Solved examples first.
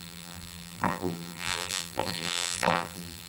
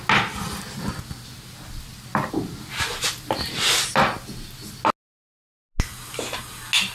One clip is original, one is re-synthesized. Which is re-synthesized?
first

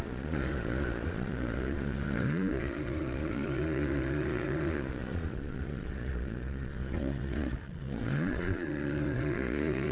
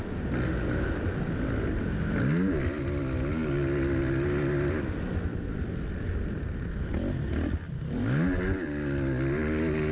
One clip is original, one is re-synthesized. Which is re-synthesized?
first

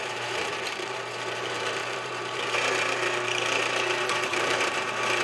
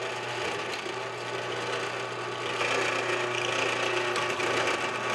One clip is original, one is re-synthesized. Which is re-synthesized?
first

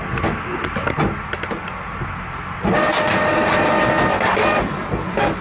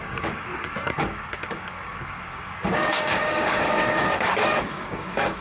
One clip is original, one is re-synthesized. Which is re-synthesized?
second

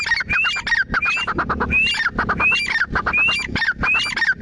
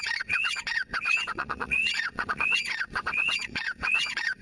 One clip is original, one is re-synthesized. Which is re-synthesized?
second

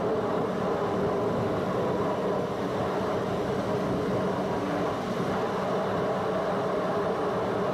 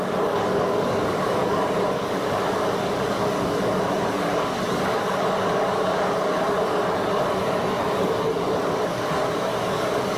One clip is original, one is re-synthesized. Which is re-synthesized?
second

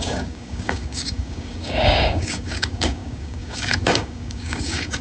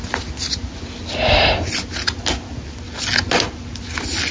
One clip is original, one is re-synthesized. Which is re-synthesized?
first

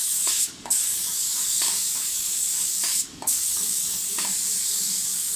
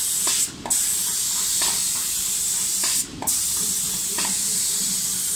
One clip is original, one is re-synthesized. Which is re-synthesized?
first